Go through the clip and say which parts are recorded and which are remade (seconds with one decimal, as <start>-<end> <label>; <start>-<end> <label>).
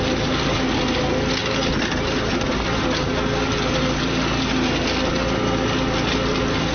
0.0-6.7 recorded